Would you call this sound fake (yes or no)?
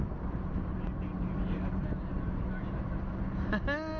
no